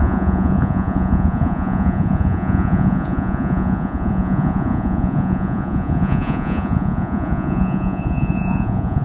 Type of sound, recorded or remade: remade